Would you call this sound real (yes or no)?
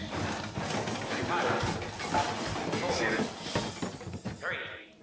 no